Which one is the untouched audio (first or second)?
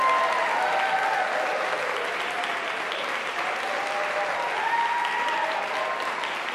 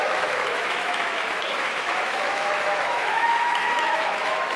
first